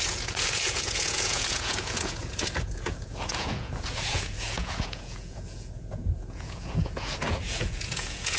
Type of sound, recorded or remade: remade